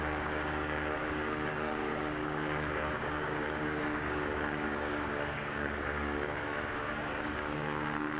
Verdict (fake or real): fake